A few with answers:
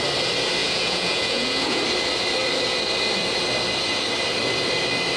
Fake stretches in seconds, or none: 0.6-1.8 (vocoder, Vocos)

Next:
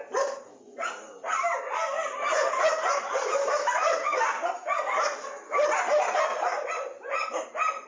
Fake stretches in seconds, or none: none

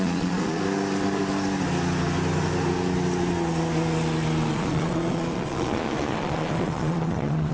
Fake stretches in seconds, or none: 0.0-0.6 (vocoder, Vocos); 4.5-7.5

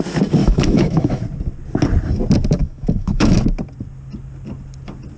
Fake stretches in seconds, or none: 0.4-1.2 (autoencoder, DAC-VAE); 2.6-3.4

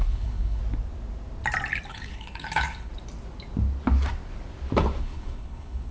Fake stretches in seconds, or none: 0.0-0.6 (codec, HILCodec); 1.9-2.9; 5.0-5.9

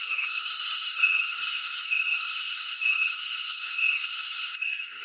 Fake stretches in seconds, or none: 0.0-5.0 (codec, SNAC)